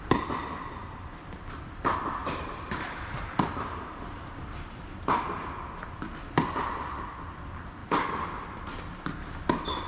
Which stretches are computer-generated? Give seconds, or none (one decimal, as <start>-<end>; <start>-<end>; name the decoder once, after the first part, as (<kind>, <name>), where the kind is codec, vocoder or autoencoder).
2.2-5.3 (vocoder, BigVGAN v2)